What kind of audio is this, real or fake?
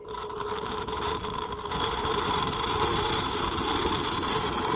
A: fake